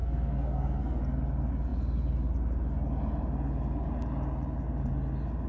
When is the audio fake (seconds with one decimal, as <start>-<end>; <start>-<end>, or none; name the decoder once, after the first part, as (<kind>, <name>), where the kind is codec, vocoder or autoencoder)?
0.0-1.0 (codec, SNAC)